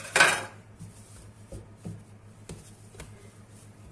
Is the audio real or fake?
real